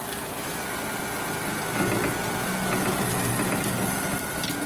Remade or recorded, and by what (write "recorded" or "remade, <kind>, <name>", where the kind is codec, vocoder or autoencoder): recorded